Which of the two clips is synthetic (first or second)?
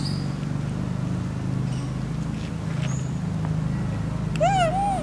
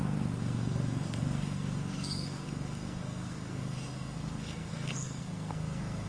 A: second